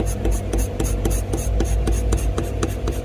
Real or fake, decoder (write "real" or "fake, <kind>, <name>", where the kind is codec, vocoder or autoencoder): real